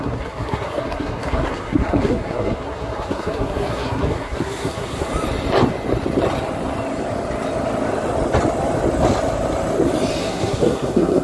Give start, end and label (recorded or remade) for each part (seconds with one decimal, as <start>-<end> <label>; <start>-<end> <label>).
0.0-5.1 remade; 5.1-10.2 recorded; 10.2-11.2 remade

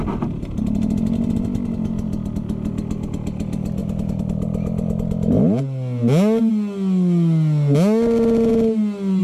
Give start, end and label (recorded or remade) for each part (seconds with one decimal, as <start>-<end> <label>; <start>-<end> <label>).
0.0-9.2 recorded

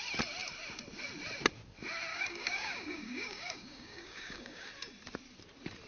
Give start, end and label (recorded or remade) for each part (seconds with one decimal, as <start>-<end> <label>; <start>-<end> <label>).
0.0-2.1 recorded; 2.1-4.7 remade; 4.7-5.9 recorded

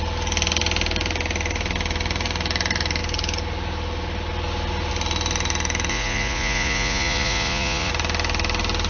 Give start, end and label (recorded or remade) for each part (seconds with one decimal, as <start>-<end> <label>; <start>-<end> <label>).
0.0-5.9 recorded; 5.9-7.9 remade; 7.9-8.9 recorded

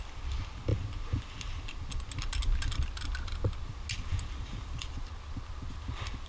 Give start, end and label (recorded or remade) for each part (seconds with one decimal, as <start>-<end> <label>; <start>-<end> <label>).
0.0-4.1 recorded; 4.1-4.9 remade; 4.9-6.3 recorded

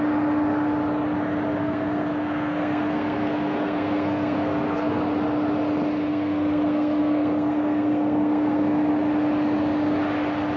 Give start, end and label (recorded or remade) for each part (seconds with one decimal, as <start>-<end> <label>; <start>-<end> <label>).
0.0-1.6 recorded; 1.6-5.0 remade; 5.0-6.1 recorded; 6.1-8.9 remade; 8.9-10.6 recorded

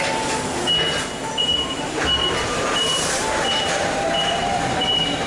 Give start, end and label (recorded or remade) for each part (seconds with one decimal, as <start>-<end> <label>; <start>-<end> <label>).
0.0-1.2 recorded; 1.2-4.4 remade; 4.4-5.3 recorded

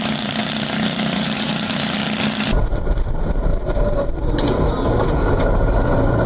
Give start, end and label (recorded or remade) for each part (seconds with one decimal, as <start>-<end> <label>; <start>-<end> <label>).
0.0-2.0 remade; 2.0-2.5 recorded; 2.5-6.3 remade